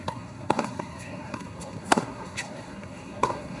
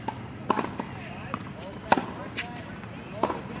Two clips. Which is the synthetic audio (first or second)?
first